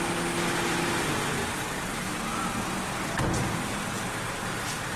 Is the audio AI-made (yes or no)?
no